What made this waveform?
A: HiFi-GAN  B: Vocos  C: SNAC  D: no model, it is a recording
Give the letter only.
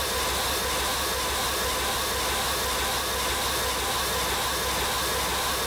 D